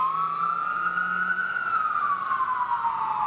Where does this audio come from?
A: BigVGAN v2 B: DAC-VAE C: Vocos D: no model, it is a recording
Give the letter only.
D